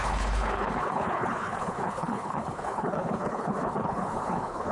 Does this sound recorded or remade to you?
remade